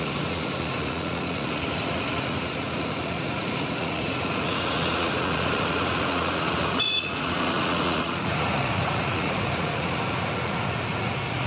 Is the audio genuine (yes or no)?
no